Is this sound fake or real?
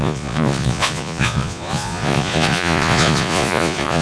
fake